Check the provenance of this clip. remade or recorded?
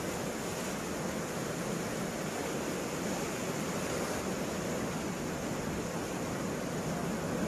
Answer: recorded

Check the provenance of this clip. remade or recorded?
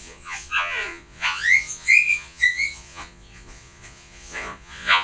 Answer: remade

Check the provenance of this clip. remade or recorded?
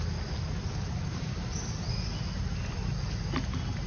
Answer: recorded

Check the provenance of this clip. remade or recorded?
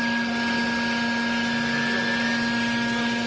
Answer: recorded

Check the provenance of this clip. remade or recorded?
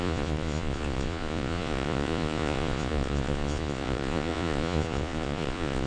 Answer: remade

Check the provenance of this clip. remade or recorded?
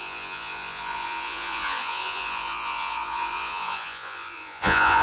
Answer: remade